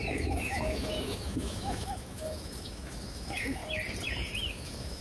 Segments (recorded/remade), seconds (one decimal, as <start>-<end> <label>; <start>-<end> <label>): 0.0-3.6 remade; 3.6-4.5 recorded; 4.5-5.0 remade